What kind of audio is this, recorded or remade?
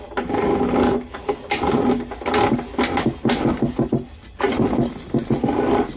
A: recorded